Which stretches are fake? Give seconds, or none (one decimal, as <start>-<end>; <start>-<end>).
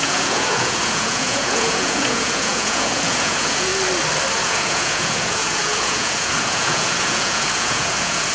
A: 0.0-3.7; 4.3-8.3